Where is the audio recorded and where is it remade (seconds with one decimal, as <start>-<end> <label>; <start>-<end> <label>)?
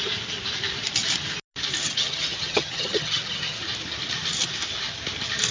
0.0-1.8 recorded; 1.8-3.6 remade; 3.6-5.5 recorded